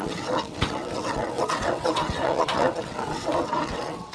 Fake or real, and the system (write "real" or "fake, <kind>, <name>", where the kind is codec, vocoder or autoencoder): fake, vocoder, WaveNeXt